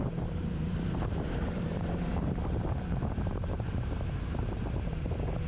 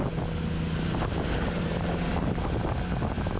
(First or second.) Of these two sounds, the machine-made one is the first